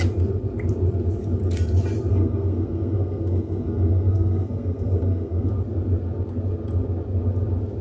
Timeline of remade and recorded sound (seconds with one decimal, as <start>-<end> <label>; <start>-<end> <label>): 0.0-2.1 recorded; 2.1-5.5 remade; 5.5-7.8 recorded